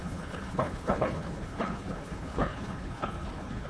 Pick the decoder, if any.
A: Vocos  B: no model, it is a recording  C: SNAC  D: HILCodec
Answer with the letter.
D